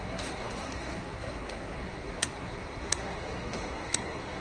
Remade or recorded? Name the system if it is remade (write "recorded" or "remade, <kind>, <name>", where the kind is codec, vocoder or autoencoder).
remade, codec, SNAC